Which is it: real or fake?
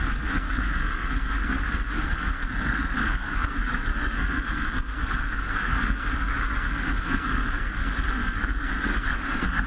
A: fake